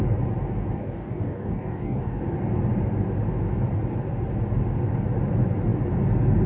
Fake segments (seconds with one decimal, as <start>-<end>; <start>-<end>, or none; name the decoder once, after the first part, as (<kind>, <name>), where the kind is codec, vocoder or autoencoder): 0.8-2.2 (codec, DAC)